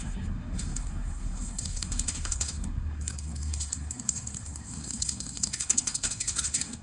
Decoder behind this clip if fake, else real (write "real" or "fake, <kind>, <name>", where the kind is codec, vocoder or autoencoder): fake, codec, SNAC